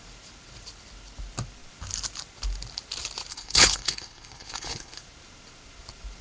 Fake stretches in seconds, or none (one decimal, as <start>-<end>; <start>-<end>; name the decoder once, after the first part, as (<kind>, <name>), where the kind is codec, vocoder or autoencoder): 3.3-5.0 (codec, HILCodec)